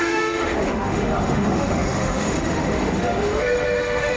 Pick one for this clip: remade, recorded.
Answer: remade